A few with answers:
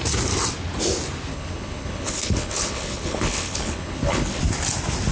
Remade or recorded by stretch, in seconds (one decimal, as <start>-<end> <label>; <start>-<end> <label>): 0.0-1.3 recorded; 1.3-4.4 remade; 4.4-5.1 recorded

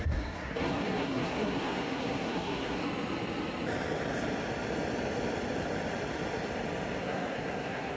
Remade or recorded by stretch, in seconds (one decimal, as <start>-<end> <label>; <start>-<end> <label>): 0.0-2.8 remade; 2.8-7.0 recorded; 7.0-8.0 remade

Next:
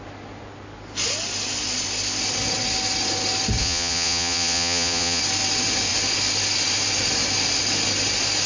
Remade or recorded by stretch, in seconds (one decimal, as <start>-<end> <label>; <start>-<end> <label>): 0.0-3.6 recorded; 3.6-5.2 remade; 5.2-8.5 recorded